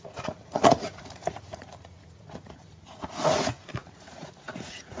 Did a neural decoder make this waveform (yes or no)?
yes